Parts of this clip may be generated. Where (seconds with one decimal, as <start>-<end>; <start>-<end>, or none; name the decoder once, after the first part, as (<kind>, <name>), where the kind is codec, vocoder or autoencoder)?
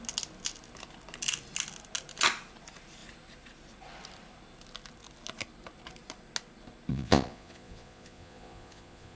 6.9-9.2 (vocoder, Vocos)